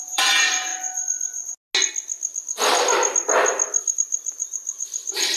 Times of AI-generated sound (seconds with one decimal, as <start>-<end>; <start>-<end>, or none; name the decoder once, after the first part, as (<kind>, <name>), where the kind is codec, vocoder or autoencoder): 0.0-0.7 (vocoder, BigVGAN v2); 3.9-5.4